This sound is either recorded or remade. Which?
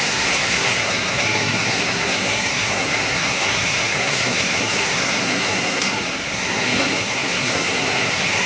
remade